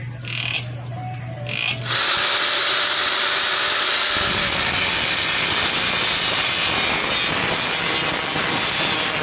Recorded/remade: recorded